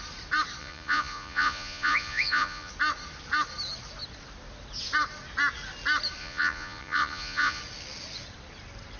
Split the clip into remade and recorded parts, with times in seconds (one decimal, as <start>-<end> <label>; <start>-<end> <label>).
0.0-0.6 recorded; 0.6-2.7 remade; 2.7-6.2 recorded; 6.2-7.6 remade; 7.6-9.0 recorded